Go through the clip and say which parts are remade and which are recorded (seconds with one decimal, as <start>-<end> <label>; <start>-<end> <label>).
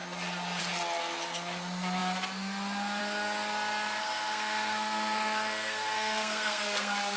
0.0-4.0 recorded; 4.0-7.2 remade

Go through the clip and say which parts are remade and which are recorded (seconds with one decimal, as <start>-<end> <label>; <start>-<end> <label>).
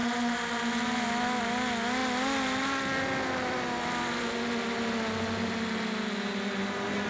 0.0-7.1 recorded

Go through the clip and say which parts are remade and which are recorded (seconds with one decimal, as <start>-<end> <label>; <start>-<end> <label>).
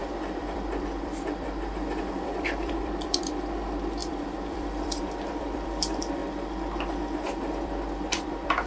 0.0-6.2 remade; 6.2-7.0 recorded; 7.0-8.7 remade